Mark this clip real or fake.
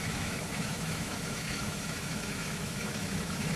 fake